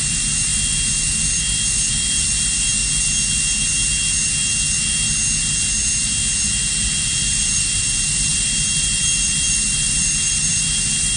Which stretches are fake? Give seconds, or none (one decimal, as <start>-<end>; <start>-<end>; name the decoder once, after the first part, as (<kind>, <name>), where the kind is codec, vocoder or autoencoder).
0.0-0.5 (vocoder, BigVGAN v2); 1.9-2.8; 6.7-11.2